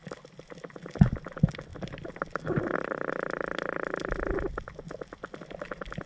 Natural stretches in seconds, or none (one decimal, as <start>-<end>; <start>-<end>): 0.0-6.1

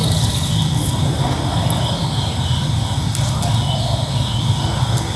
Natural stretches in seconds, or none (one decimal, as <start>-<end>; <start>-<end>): 0.0-5.2

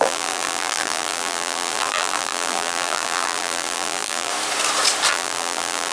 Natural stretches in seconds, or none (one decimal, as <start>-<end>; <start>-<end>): 4.3-5.1

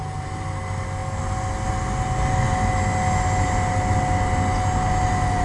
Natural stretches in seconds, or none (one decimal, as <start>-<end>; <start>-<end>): 0.0-5.4